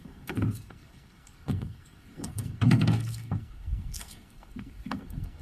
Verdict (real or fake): fake